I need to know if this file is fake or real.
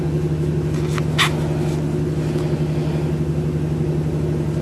real